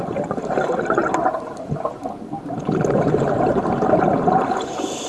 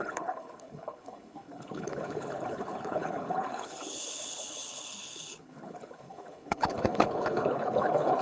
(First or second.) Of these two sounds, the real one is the first